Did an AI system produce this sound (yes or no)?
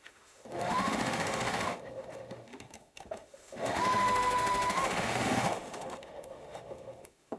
yes